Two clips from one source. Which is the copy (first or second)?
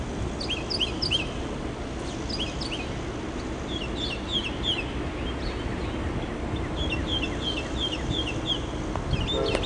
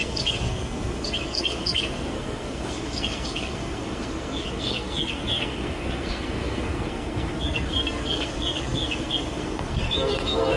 second